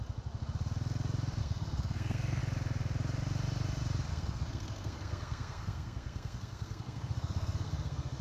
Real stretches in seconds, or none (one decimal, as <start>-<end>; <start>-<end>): 0.0-1.4; 2.4-4.1